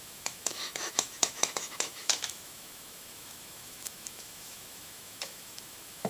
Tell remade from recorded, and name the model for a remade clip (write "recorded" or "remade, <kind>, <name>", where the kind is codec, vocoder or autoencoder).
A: remade, autoencoder, DAC-VAE